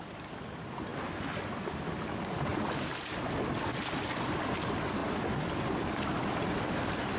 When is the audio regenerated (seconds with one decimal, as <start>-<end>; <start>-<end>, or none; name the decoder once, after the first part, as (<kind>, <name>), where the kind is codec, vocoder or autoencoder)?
0.0-0.9 (vocoder, BigVGAN v2); 1.6-2.5; 4.3-7.2